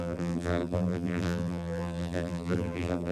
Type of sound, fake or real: fake